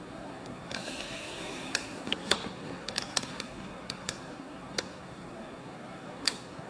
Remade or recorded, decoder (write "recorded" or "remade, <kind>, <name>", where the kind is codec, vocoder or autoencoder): remade, codec, SNAC